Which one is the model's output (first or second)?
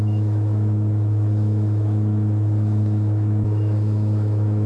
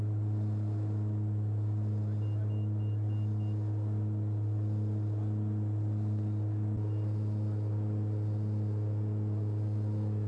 first